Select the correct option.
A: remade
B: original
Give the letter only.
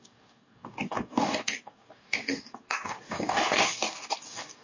A